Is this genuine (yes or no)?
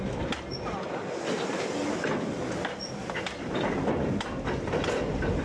yes